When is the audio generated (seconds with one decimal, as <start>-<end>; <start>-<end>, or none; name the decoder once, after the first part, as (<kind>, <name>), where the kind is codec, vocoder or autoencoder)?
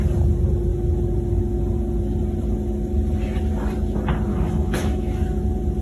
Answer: 4.3-5.2 (autoencoder, DAC-VAE)